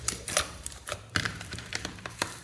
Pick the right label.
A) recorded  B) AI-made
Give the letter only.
B